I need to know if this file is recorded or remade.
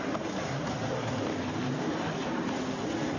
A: recorded